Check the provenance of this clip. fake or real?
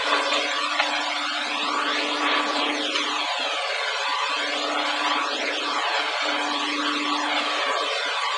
real